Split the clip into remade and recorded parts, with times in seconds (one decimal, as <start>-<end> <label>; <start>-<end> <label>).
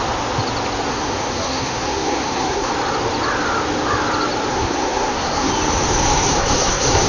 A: 0.0-0.9 recorded; 0.9-2.7 remade; 2.7-4.5 recorded; 4.5-5.5 remade; 5.5-6.1 recorded; 6.1-7.1 remade